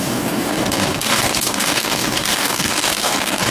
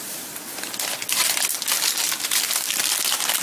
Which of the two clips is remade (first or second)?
first